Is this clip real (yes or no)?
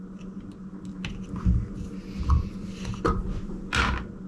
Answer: yes